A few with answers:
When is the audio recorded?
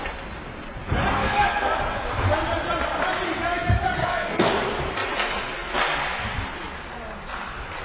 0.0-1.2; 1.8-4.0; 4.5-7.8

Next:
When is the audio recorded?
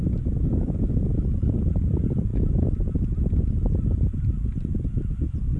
0.0-5.6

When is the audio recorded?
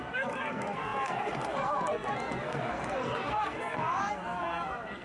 none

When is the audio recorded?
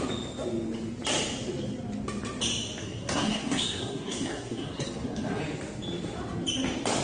0.0-2.8; 5.4-7.0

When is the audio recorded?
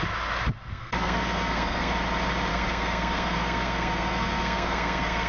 0.0-0.7; 1.9-2.5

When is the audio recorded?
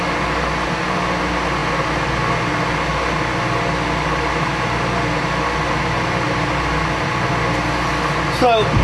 0.0-8.8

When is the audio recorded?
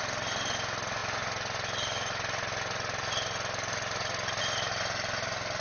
0.0-5.6